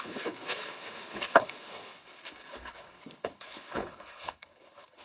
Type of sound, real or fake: fake